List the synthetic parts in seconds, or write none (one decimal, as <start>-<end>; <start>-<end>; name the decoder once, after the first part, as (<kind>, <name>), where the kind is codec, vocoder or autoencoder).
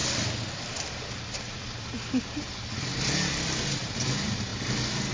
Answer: none